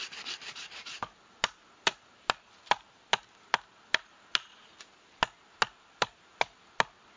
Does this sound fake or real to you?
real